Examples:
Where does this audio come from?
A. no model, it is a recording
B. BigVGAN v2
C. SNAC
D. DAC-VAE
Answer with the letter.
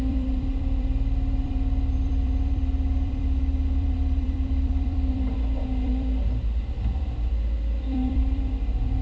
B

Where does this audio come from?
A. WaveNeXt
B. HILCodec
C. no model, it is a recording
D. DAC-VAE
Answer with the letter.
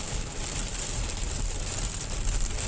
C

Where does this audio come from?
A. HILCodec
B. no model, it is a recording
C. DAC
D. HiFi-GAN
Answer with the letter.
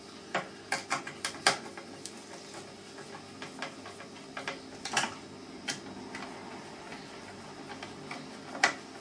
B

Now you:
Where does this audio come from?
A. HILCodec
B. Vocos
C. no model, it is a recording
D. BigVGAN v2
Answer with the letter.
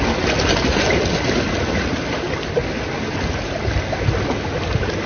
C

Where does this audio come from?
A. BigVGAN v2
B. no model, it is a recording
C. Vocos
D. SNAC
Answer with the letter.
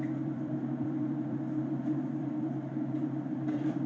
A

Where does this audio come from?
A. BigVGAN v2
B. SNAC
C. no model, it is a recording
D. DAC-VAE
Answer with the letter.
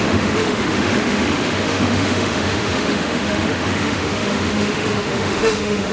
D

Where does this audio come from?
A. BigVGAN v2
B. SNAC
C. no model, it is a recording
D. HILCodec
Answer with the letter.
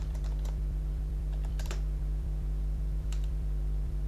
A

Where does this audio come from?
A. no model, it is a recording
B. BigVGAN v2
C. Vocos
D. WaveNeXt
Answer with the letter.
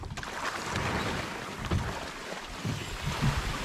A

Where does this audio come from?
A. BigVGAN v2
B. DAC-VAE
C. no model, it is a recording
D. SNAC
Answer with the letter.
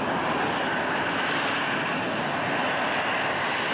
C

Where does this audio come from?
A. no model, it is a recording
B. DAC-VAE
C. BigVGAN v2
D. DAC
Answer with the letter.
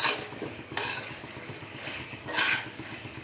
D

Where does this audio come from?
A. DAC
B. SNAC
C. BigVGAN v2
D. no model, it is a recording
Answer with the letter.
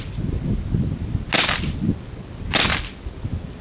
D